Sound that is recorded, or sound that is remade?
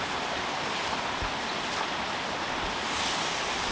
recorded